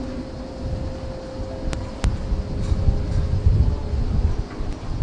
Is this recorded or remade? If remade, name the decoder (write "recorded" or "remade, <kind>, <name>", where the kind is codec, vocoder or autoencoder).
recorded